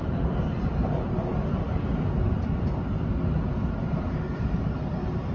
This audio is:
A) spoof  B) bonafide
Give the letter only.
B